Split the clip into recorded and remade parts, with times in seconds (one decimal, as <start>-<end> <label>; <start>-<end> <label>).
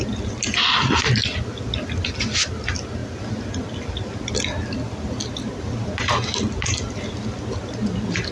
0.0-8.3 recorded